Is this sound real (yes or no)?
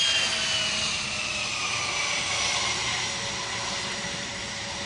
yes